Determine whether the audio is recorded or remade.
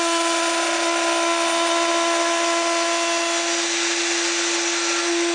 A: recorded